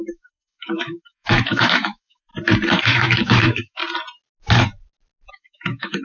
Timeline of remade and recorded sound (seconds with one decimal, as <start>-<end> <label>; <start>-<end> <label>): 0.0-2.3 remade; 2.3-2.8 recorded; 2.8-3.8 remade; 3.8-5.3 recorded; 5.3-6.0 remade

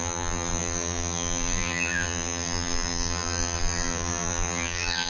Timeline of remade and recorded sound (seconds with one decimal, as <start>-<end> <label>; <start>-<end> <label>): 0.0-5.1 remade